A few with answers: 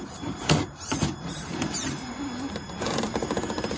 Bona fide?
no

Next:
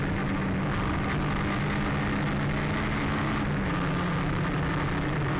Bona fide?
yes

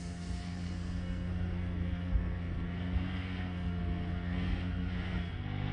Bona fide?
no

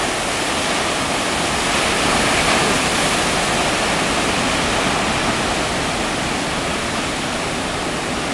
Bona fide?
yes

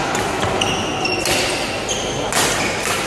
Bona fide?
yes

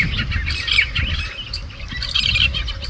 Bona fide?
yes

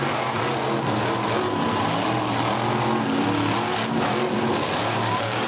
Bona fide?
yes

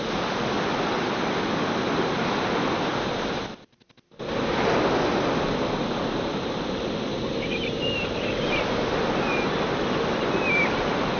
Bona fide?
yes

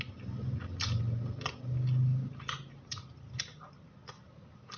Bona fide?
yes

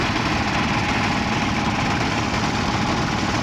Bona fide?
yes